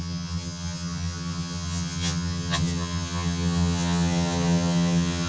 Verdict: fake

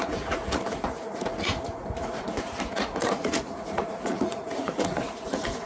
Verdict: fake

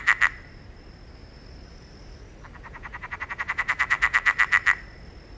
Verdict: real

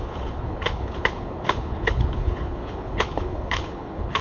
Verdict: fake